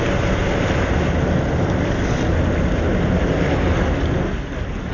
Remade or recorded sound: recorded